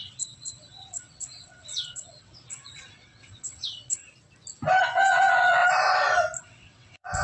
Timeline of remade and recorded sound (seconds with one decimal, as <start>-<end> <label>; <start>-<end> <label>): 0.0-4.0 remade; 4.0-4.8 recorded; 4.8-5.6 remade; 5.6-6.4 recorded; 6.4-7.2 remade